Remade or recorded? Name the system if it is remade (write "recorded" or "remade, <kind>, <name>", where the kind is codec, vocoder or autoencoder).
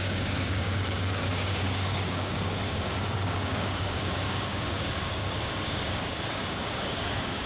remade, codec, DAC